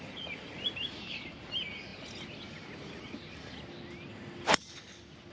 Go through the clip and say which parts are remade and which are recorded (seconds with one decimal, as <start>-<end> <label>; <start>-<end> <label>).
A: 0.0-5.3 recorded